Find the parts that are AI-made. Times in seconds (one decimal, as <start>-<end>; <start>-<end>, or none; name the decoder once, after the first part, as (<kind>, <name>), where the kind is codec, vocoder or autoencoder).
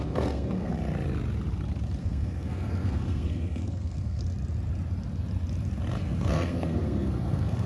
0.0-0.7 (codec, SNAC); 2.0-4.2; 6.0-7.7